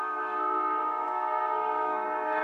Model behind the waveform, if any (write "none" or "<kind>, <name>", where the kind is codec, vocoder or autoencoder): codec, SNAC